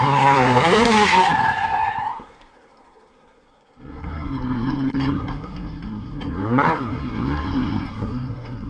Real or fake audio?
fake